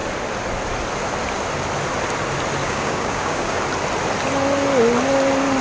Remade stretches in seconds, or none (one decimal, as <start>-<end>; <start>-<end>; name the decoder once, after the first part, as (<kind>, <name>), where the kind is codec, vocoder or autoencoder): 2.6-3.6 (codec, DAC)

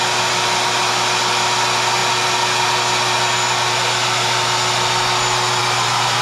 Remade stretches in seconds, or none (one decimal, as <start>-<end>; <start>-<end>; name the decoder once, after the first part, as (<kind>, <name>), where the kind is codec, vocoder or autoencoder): none